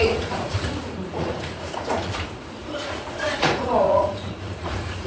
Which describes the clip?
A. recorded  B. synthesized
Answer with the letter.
B